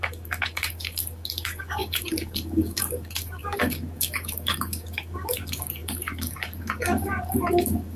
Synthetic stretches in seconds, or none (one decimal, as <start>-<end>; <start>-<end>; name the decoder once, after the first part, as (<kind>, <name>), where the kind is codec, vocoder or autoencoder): 0.0-8.0 (codec, DAC)